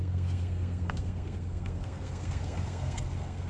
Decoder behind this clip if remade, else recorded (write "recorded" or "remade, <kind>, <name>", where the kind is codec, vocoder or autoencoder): remade, codec, SNAC